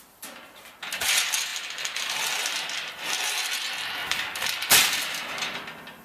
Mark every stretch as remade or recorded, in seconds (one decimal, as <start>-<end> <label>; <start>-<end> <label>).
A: 0.0-1.5 recorded; 1.5-3.5 remade; 3.5-4.0 recorded; 4.0-4.7 remade; 4.7-6.0 recorded